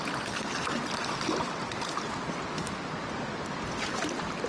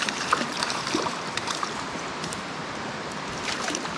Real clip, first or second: first